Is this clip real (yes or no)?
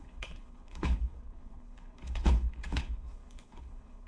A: no